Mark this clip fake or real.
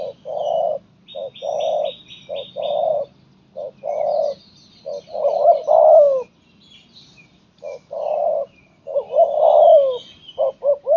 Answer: real